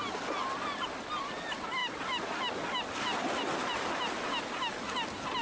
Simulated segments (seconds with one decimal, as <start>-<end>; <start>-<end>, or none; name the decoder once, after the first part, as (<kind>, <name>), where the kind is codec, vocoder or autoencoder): none